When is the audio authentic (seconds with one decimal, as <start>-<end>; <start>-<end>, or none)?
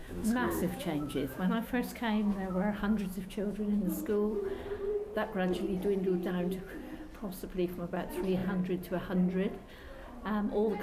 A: 3.8-10.8